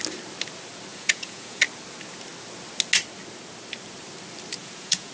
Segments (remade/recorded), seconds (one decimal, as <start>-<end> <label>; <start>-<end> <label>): 0.0-0.9 recorded; 0.9-1.6 remade; 1.6-4.6 recorded; 4.6-5.1 remade

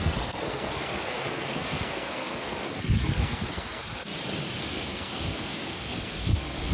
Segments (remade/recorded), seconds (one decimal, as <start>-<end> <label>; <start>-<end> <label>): 0.0-4.1 remade; 4.1-4.6 recorded; 4.6-6.7 remade